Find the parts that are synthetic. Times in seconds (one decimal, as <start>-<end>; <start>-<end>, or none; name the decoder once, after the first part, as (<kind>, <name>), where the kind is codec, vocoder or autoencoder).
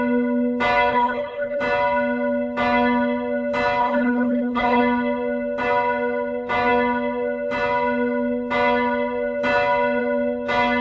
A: 0.9-1.6 (codec, HILCodec); 3.8-4.8